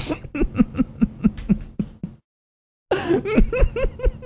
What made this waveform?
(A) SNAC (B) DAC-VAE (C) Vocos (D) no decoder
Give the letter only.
D